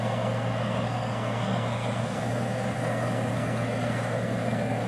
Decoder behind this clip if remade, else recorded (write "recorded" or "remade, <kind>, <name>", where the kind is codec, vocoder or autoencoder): remade, codec, SNAC